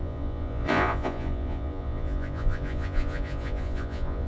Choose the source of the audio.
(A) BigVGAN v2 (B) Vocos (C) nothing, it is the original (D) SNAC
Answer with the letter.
B